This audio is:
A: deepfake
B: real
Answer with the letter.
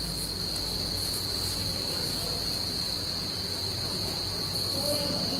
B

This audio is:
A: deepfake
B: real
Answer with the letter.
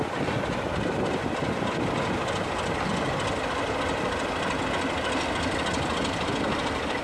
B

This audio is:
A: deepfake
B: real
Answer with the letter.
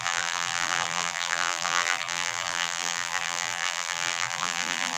A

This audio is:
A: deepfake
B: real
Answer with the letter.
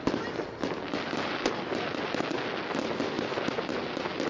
B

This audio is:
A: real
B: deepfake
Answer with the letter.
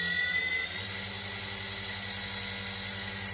A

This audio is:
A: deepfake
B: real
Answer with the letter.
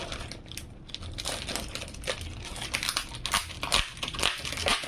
B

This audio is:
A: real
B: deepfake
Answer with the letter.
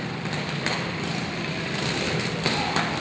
A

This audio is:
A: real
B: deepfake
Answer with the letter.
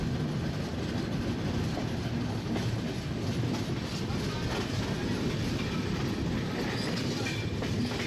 A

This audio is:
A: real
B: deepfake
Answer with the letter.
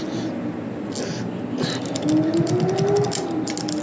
A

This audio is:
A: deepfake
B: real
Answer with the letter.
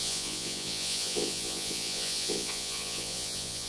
A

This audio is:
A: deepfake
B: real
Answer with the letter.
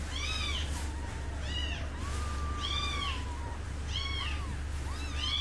B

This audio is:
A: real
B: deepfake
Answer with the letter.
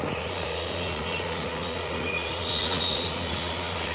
B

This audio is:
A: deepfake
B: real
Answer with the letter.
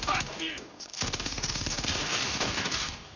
A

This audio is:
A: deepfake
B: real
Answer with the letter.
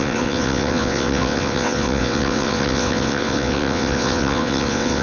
A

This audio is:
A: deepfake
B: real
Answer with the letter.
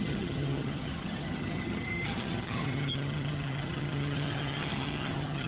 A